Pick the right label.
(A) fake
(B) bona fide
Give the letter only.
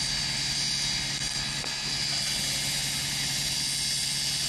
B